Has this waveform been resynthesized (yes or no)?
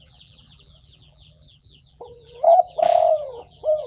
yes